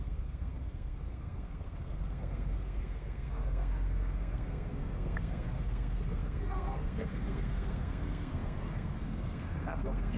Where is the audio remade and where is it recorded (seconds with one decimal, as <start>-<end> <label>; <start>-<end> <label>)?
0.0-10.2 remade